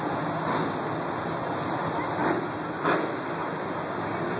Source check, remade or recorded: recorded